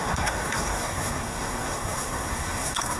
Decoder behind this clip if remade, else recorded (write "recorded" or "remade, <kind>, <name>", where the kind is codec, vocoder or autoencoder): remade, codec, SNAC